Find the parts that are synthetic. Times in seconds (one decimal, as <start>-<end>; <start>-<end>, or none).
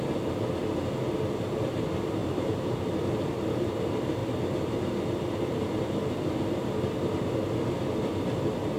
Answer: 2.2-2.8